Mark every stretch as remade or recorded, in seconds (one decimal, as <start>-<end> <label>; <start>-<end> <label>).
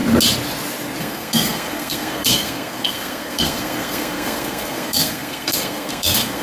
0.0-1.0 recorded; 1.0-6.4 remade